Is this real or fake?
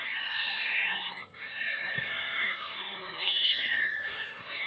fake